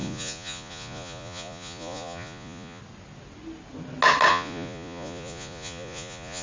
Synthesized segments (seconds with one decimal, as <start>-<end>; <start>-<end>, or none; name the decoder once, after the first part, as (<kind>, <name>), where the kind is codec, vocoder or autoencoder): 0.0-2.8 (vocoder, Vocos); 4.3-6.4